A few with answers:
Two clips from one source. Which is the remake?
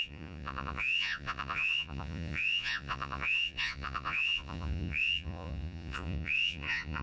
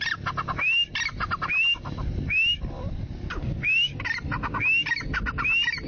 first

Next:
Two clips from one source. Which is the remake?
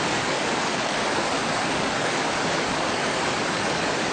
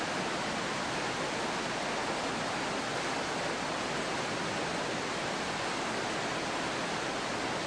first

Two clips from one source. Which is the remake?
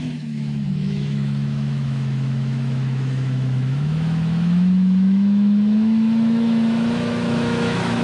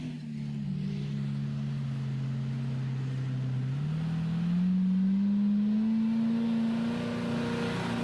first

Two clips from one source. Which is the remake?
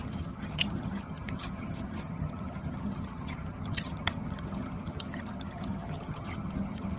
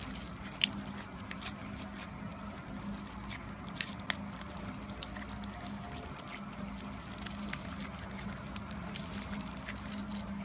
first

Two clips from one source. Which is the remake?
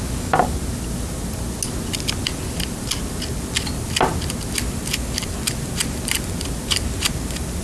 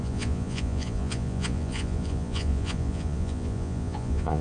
second